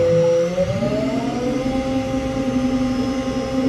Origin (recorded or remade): recorded